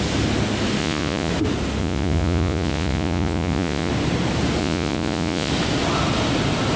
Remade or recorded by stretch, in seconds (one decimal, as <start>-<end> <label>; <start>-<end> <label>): 0.0-0.8 recorded; 0.8-1.3 remade; 1.3-1.8 recorded; 1.8-3.9 remade; 3.9-4.6 recorded; 4.6-5.5 remade; 5.5-6.8 recorded